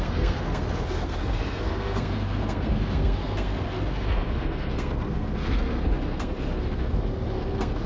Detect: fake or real fake